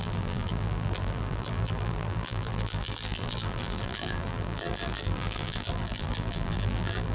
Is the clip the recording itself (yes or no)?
no